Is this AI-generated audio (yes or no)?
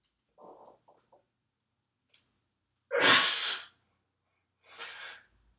no